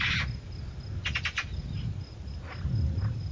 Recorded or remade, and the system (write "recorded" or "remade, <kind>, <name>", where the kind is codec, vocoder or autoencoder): recorded